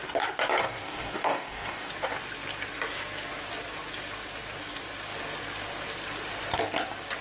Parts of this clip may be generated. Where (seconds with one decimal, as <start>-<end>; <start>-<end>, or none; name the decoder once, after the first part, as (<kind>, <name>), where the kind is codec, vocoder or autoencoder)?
0.6-1.9 (codec, DAC)